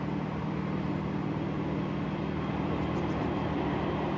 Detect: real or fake real